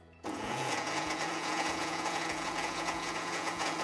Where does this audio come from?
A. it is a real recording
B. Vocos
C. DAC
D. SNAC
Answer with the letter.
B